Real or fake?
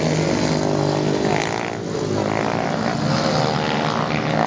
real